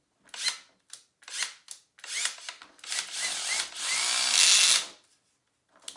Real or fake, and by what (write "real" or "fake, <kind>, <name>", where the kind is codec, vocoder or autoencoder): real